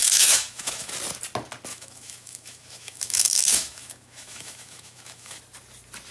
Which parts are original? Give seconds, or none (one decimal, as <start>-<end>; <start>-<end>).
0.9-1.7; 5.4-6.1